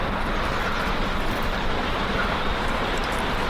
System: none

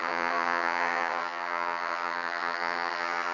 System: vocoder, HiFi-GAN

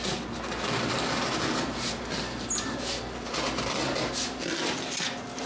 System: none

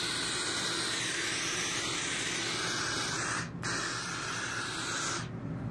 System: none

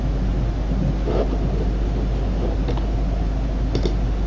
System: none